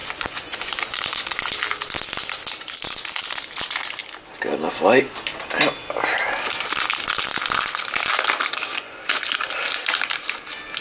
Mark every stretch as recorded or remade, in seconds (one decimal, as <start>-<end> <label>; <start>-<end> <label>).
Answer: 0.0-1.4 remade; 1.4-8.7 recorded; 8.7-9.2 remade; 9.2-10.8 recorded